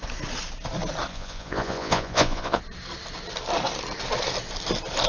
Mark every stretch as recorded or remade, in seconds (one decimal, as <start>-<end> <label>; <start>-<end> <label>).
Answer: 0.0-1.1 recorded; 1.1-2.6 remade; 2.6-5.1 recorded